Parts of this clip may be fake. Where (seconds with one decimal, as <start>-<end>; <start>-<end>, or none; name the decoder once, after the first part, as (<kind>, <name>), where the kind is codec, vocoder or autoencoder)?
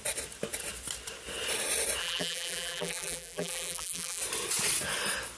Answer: 2.0-4.2 (vocoder, BigVGAN v2)